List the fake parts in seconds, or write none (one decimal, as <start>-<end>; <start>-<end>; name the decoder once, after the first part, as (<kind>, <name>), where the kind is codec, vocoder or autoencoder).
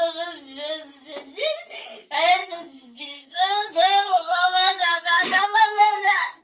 2.4-6.4 (codec, SNAC)